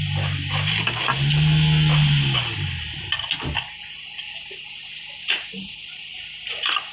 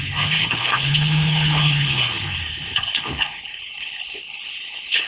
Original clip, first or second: first